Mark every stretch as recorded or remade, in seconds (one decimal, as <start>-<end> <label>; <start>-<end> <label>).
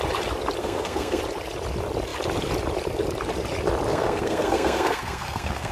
0.0-0.6 recorded; 0.6-1.2 remade; 1.2-3.9 recorded; 3.9-5.7 remade